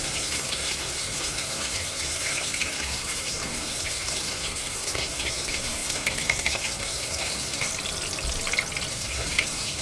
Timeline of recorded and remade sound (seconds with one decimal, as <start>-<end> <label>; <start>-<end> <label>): 0.0-7.7 remade; 7.7-8.9 recorded; 8.9-9.8 remade